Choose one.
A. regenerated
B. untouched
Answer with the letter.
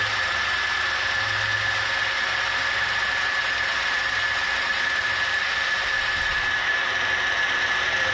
B